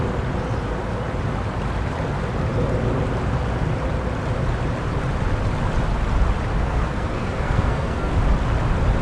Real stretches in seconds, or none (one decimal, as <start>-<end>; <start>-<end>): 0.0-6.6; 8.1-9.0